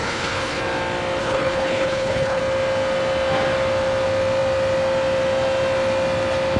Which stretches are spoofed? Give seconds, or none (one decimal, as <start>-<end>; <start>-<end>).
0.0-0.6; 1.2-2.4